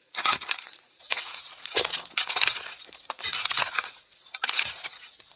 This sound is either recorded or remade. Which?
remade